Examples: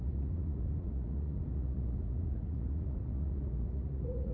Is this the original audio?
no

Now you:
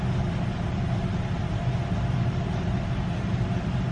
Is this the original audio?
yes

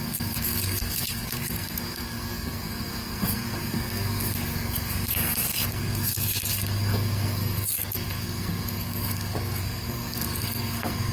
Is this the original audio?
no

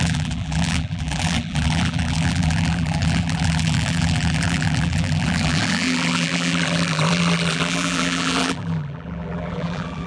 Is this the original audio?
no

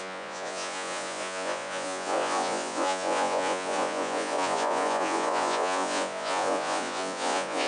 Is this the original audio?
no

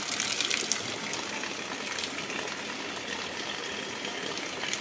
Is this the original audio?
yes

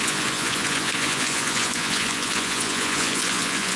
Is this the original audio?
no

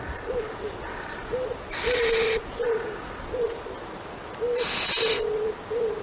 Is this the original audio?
yes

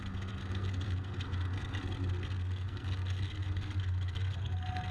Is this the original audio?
no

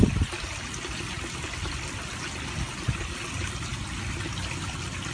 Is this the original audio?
yes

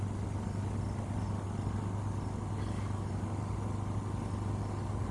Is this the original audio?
yes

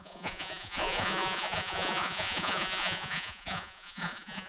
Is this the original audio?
no